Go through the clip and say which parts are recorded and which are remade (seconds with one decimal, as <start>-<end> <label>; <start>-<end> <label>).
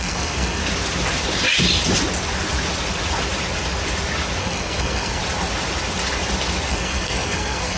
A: 0.0-0.6 remade; 0.6-4.4 recorded; 4.4-5.2 remade; 5.2-6.7 recorded; 6.7-7.8 remade